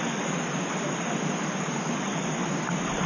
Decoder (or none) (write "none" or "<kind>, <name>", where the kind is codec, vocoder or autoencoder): none